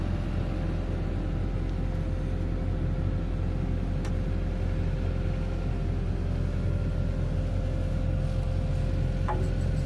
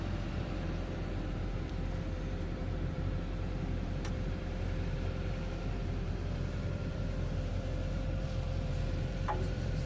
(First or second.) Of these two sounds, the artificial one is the second